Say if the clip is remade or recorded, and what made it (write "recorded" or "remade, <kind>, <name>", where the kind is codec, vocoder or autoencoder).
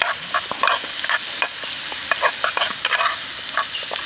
recorded